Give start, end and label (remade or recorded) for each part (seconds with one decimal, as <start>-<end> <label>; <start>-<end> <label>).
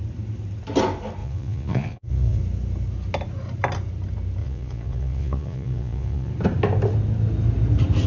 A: 0.0-1.2 recorded; 1.2-2.4 remade; 2.4-4.4 recorded; 4.4-6.3 remade; 6.3-8.1 recorded